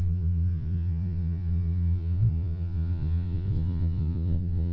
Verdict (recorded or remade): remade